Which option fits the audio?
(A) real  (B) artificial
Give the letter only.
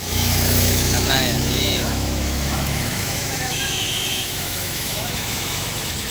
B